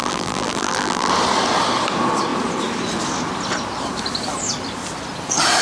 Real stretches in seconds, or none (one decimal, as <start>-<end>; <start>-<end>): 1.1-5.6